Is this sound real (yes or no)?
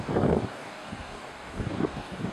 no